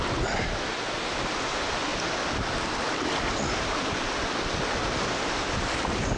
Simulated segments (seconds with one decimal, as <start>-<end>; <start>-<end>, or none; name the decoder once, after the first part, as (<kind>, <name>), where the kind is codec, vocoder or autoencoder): none